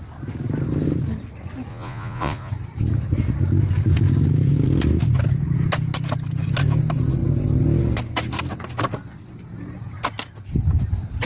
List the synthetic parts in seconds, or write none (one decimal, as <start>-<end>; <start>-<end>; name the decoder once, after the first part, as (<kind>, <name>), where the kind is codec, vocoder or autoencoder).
1.7-2.5 (vocoder, Vocos)